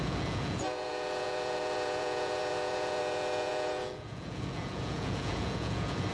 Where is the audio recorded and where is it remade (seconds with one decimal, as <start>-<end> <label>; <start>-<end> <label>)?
0.0-6.1 remade